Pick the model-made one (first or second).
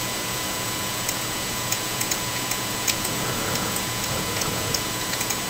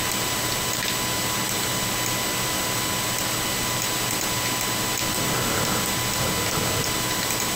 first